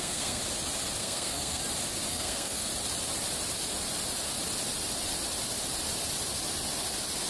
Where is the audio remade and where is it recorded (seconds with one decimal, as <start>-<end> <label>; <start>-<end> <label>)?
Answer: 0.0-0.4 remade; 0.4-1.0 recorded; 1.0-1.6 remade; 1.6-2.1 recorded; 2.1-2.7 remade; 2.7-7.3 recorded